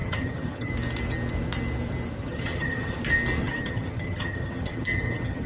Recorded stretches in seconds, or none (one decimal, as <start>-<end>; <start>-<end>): 0.7-2.2; 3.0-3.4